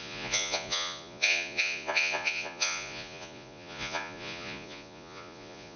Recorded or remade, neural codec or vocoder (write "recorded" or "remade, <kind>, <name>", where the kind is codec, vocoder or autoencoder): remade, vocoder, Vocos